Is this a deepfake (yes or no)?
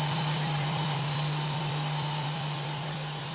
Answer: yes